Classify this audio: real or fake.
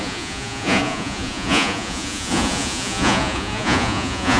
fake